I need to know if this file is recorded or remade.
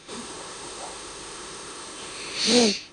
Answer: remade